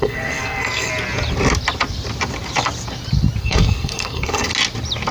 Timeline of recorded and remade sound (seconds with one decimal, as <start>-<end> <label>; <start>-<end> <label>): 0.0-0.9 remade; 0.9-3.4 recorded; 3.4-4.5 remade; 4.5-5.1 recorded